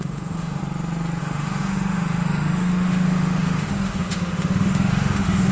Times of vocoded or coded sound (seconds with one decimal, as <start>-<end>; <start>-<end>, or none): 0.0-0.6; 1.2-5.5